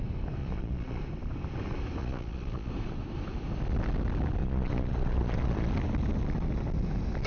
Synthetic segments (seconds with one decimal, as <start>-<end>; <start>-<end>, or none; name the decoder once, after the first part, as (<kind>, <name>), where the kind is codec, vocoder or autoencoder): 0.4-1.0 (vocoder, Vocos); 2.0-2.7; 4.4-5.7